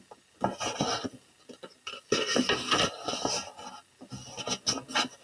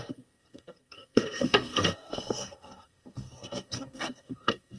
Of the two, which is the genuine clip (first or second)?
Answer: first